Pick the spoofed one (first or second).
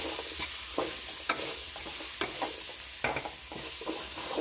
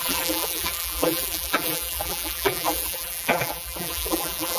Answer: second